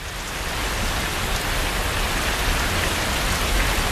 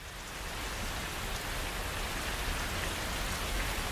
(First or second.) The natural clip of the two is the second